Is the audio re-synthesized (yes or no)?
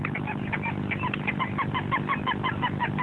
no